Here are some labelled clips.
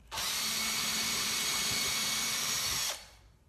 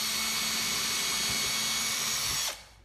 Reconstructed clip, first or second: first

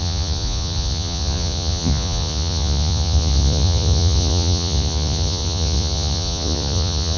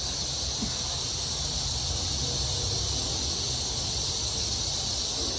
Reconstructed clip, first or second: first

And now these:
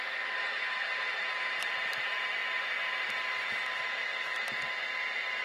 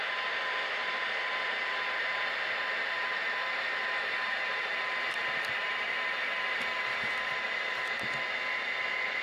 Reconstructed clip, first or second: second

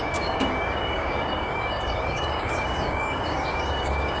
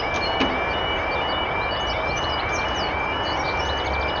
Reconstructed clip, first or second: first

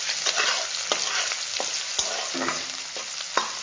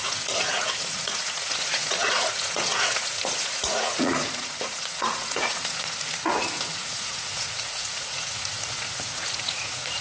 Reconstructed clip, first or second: second